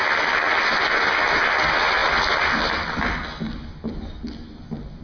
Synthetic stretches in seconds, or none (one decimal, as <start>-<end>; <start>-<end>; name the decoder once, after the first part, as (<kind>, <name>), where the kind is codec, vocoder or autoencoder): none